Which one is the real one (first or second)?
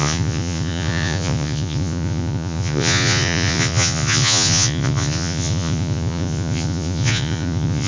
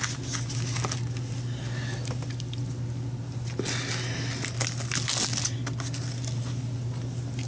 second